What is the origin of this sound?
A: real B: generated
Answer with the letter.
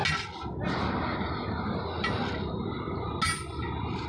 A